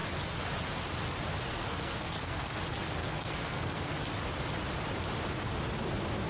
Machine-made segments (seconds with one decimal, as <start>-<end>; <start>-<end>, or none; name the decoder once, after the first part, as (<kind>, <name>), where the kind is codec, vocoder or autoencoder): 1.5-2.6 (codec, SNAC); 3.0-3.9